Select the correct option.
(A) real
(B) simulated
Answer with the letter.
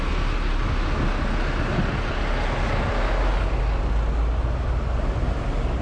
A